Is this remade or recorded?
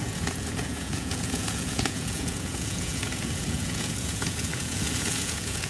remade